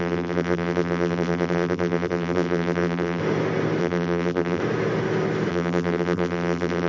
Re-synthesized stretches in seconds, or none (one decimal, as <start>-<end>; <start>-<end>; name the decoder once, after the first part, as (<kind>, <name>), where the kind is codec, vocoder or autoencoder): 0.0-3.2 (vocoder, BigVGAN v2); 3.8-4.6; 5.5-6.9